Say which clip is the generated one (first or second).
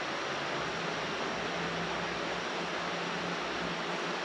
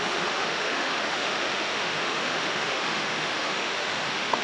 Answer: second